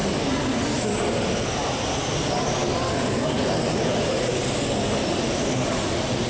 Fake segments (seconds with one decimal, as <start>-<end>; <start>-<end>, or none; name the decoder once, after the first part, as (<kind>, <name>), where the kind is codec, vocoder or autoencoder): none